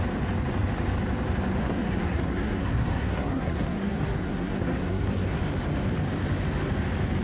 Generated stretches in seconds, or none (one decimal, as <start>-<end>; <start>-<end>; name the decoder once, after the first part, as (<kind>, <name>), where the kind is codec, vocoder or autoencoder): 1.6-5.4 (codec, SNAC)